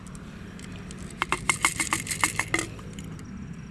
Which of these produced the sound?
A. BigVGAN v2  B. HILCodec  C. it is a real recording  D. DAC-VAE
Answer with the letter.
C